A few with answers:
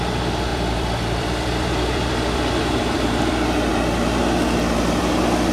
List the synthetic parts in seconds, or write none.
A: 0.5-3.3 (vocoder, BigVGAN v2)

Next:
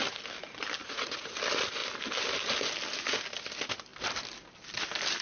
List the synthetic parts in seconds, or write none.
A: 0.8-1.3 (vocoder, Vocos)

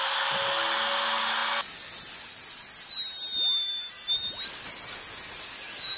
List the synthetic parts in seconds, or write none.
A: none

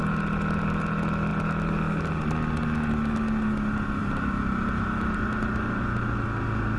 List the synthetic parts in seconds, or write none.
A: 4.0-5.8 (vocoder, BigVGAN v2)

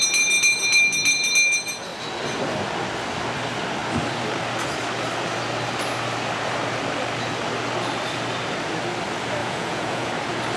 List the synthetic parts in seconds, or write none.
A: 9.4-10.1 (vocoder, Vocos)